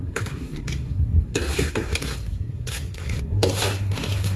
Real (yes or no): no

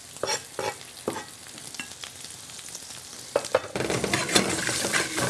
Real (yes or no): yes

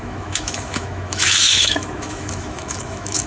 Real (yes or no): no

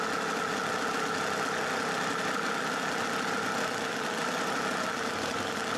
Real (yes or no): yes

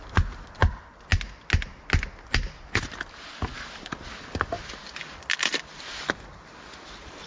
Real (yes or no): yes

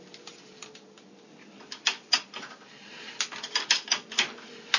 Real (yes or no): yes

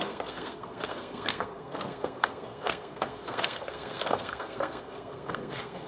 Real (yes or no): no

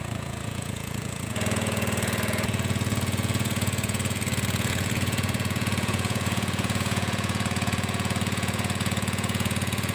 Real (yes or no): no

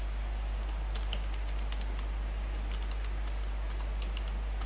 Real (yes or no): yes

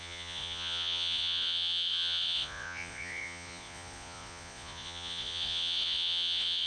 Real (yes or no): no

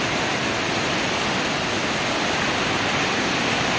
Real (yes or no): yes